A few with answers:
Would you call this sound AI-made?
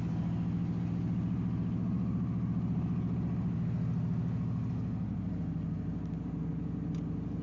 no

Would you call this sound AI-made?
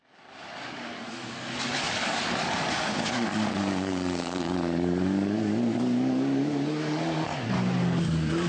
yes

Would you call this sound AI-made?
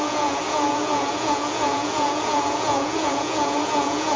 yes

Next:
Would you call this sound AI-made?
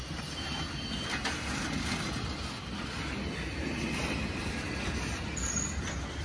no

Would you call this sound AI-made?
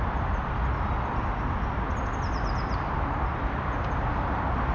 no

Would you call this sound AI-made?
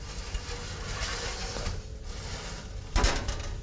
no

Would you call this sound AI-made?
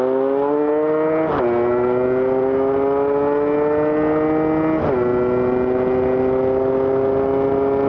no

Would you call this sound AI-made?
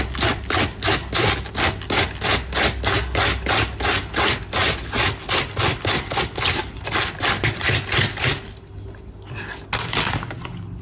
no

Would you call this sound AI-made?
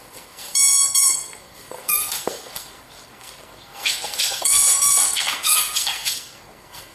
yes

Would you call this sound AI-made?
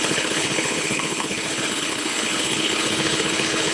yes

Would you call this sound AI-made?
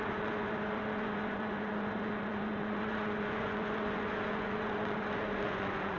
yes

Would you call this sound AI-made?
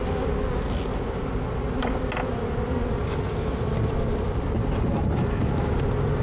no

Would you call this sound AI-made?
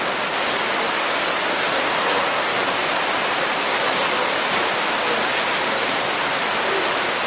no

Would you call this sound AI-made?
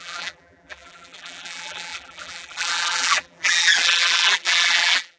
yes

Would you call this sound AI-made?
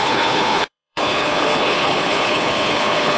yes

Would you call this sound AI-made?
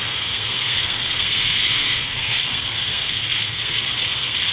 yes